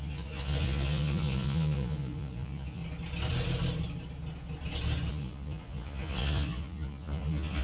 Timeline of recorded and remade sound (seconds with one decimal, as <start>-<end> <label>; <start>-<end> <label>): 0.0-2.8 remade; 2.8-5.1 recorded; 5.1-7.6 remade